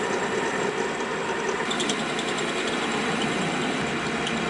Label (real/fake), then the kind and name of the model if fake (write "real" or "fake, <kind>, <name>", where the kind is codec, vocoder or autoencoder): fake, vocoder, BigVGAN v2